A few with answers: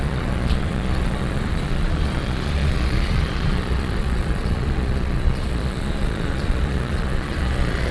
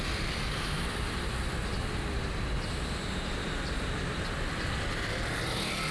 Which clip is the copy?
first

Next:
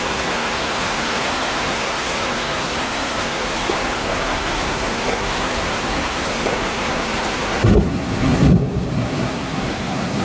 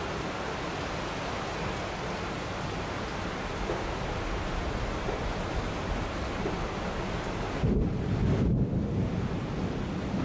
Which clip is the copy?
first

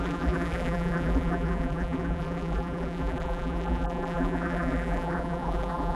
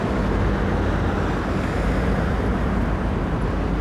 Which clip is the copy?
first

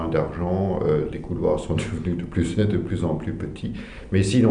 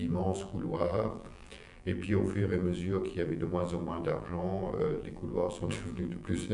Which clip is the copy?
second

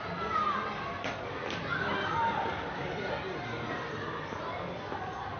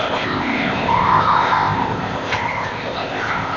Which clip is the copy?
second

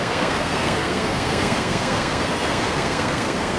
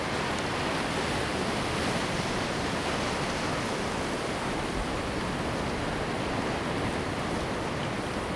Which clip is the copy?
first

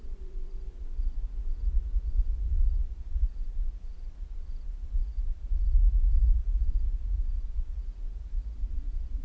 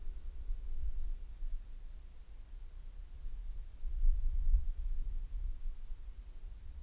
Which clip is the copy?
first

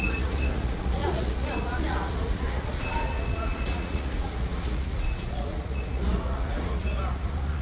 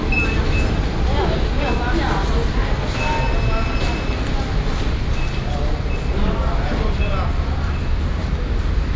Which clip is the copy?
first